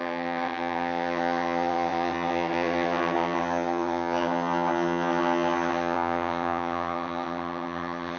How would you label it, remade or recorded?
remade